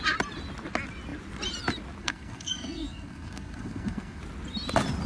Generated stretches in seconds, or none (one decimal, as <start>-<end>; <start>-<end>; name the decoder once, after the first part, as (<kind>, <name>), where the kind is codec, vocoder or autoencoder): 2.0-4.2 (codec, SNAC)